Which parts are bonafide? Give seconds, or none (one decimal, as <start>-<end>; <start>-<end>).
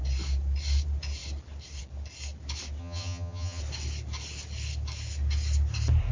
0.0-2.8; 3.6-6.1